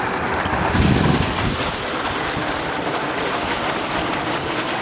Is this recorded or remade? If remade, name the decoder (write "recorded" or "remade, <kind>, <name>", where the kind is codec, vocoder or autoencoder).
recorded